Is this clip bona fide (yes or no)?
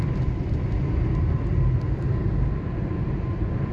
yes